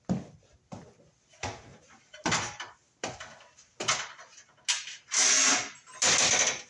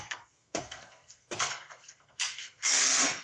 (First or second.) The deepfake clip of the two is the second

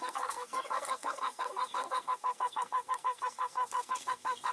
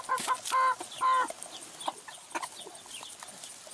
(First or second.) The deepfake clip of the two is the first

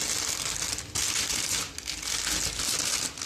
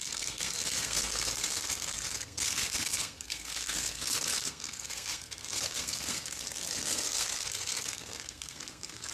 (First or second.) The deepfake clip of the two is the second